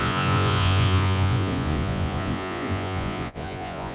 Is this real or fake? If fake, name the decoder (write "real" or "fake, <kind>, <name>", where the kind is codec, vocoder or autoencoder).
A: fake, vocoder, Vocos